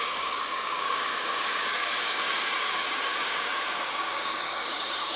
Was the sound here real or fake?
fake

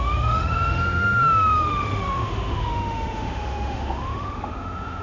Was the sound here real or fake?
fake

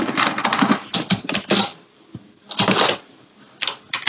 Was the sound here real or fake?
real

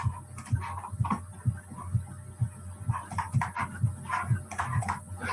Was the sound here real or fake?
real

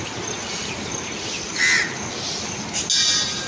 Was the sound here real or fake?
real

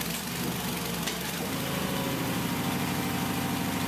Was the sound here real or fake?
real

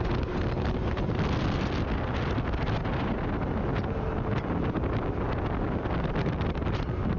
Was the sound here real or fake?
real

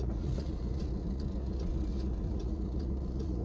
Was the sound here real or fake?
fake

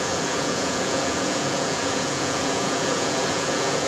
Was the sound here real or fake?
fake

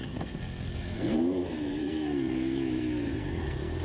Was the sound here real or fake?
fake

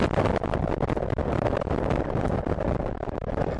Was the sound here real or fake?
real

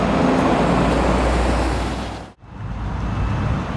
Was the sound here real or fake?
real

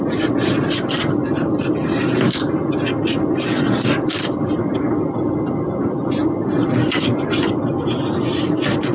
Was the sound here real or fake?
real